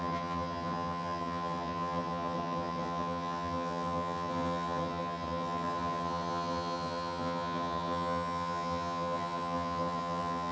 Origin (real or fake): fake